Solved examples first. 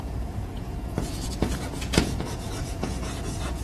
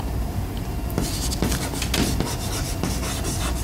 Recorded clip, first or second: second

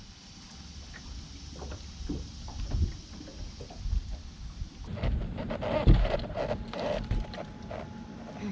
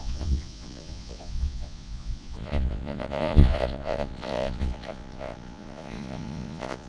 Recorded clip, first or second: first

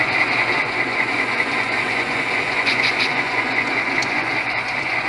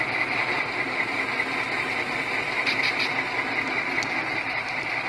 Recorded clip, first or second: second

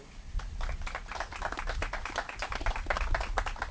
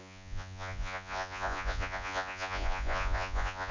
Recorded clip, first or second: first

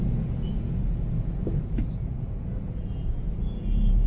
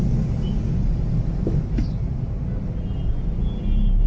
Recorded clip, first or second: second